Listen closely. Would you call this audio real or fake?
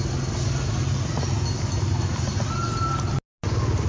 real